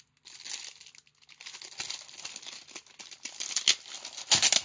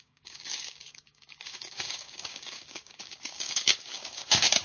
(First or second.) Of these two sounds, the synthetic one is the second